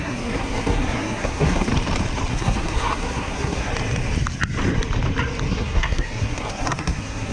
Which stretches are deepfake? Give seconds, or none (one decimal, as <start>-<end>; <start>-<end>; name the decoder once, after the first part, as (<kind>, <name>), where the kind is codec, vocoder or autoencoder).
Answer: 0.0-1.7 (codec, SNAC); 2.3-3.7; 5.5-7.3